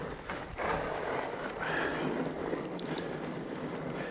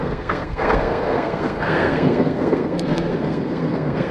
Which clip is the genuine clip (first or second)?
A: first